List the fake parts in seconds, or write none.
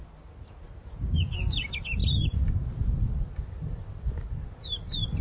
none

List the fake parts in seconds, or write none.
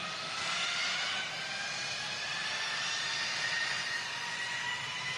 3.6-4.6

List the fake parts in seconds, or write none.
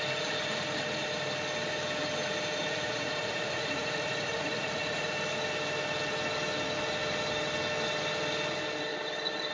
2.6-5.1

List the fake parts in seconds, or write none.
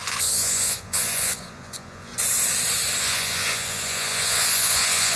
0.0-2.1; 3.0-5.2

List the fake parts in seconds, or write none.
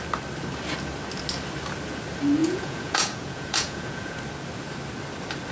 2.4-4.2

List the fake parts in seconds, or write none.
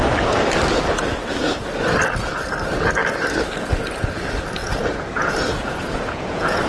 4.6-6.7